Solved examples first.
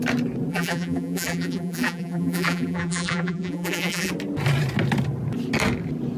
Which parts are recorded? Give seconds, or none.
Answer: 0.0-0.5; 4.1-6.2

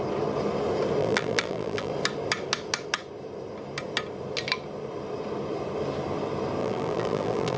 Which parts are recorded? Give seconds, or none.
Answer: 0.0-1.0; 1.9-6.6

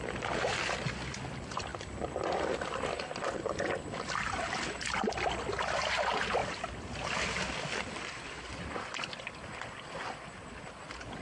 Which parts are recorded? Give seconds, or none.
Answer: 1.7-3.4

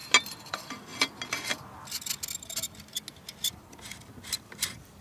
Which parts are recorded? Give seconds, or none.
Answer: 0.0-0.5; 0.9-3.7

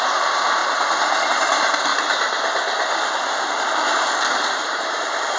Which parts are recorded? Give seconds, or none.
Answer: 0.6-1.3; 1.9-3.5

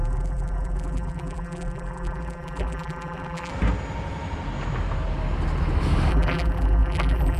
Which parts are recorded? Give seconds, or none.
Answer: 3.5-6.1

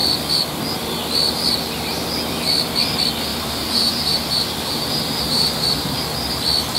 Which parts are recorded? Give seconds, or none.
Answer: 0.0-3.3; 6.0-6.8

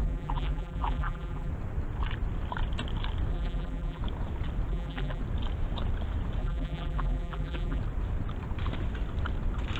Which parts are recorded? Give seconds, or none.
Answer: 1.5-3.3; 4.0-4.7; 5.2-6.4; 7.8-9.8